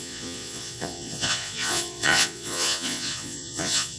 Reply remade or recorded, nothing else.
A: remade